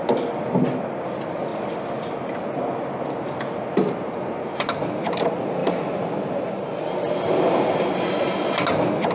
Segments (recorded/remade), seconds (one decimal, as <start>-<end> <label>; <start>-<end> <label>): 0.0-9.1 recorded